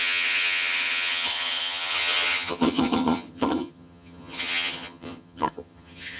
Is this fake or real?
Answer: fake